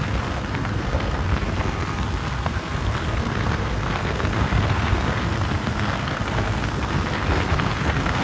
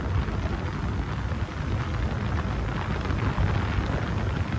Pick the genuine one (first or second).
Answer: second